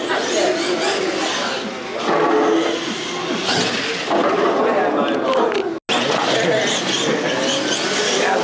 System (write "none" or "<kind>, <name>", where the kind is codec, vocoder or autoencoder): none